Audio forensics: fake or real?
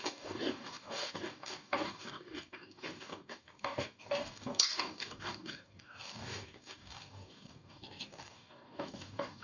fake